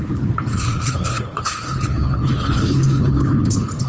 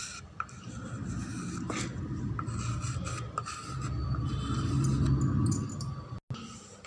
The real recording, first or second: second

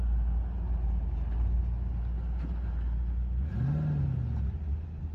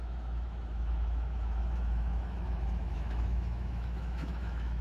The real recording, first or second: first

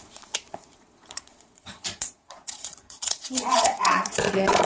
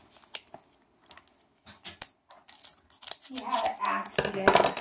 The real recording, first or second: second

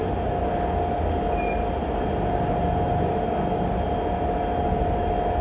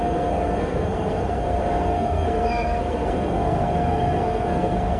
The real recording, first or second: first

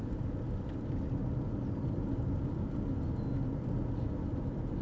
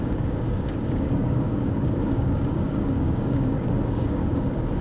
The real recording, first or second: first